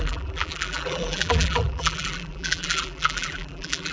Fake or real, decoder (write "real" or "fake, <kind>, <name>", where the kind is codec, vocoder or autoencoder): fake, vocoder, BigVGAN v2